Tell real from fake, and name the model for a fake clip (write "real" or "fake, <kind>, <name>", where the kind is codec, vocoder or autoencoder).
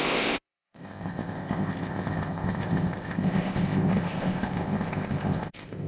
fake, codec, ZipCodec